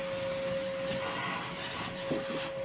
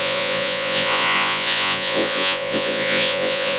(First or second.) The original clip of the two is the first